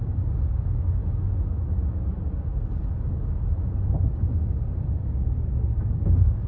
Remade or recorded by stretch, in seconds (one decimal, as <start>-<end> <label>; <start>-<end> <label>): 0.0-1.0 remade; 1.0-4.9 recorded; 4.9-6.5 remade